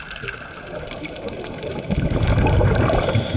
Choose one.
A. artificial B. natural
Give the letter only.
A